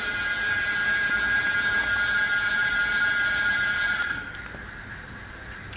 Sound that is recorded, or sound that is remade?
recorded